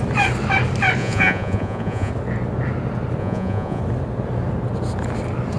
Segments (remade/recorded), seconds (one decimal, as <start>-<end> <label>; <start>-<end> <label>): 0.0-1.0 recorded; 1.0-2.1 remade; 2.1-3.2 recorded; 3.2-3.8 remade; 3.8-5.6 recorded